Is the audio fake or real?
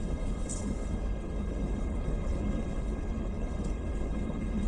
fake